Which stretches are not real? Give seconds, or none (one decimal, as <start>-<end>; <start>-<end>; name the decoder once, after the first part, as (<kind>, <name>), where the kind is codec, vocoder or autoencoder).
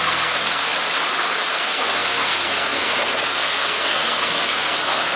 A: 0.0-0.7 (codec, SNAC); 1.5-5.2